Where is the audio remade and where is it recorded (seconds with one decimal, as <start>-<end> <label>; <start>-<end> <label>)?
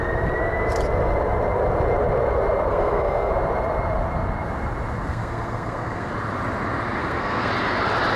0.0-2.7 recorded; 2.7-3.3 remade; 3.3-5.1 recorded; 5.1-6.1 remade; 6.1-7.0 recorded; 7.0-7.5 remade; 7.5-8.2 recorded